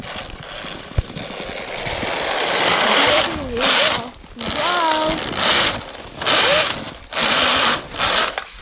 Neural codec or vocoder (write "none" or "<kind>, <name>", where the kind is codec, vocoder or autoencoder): none